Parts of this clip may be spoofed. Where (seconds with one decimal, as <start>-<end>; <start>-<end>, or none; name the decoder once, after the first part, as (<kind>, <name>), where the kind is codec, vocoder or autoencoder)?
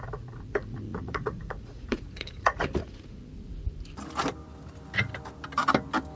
0.9-3.2 (vocoder, Vocos)